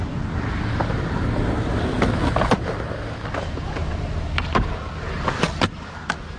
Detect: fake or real real